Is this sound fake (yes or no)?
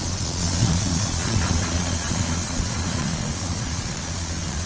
yes